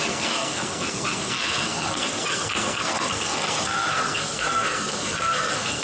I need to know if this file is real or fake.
fake